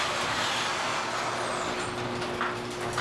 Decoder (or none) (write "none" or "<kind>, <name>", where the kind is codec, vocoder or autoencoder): none